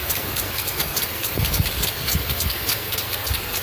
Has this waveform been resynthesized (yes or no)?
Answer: yes